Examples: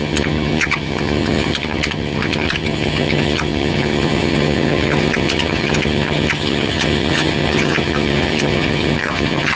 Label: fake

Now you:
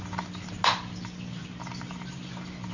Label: real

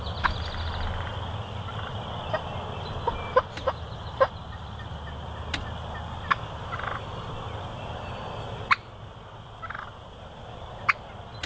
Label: real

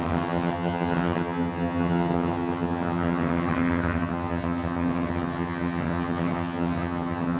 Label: fake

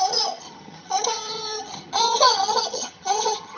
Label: fake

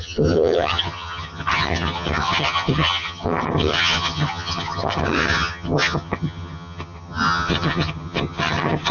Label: fake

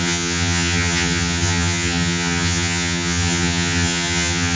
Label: fake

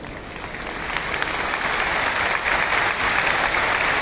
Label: real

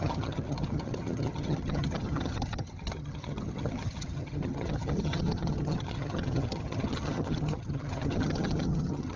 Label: fake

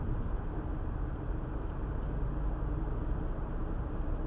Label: real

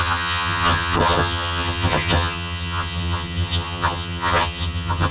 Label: fake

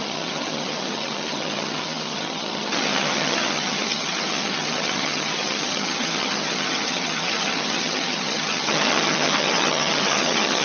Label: fake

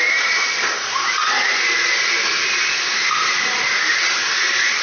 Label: real